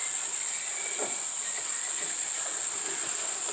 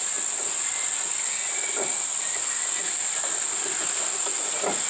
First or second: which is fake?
first